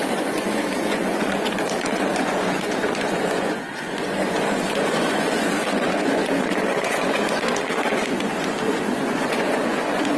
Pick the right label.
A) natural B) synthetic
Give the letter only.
B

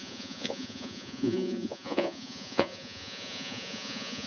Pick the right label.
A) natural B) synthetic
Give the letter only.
B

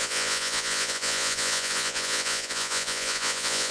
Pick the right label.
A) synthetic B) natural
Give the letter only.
A